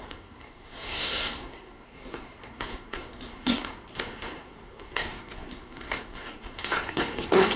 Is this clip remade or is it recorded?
remade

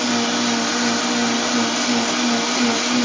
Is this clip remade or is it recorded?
recorded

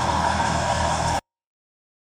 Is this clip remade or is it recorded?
remade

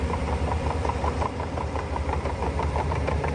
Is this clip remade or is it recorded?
remade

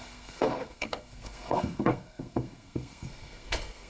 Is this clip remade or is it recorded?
remade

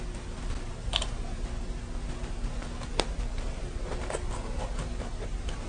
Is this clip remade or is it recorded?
recorded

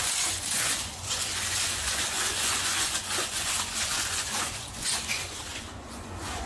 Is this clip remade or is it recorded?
remade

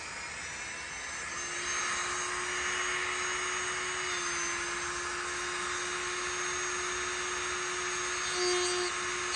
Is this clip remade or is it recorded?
recorded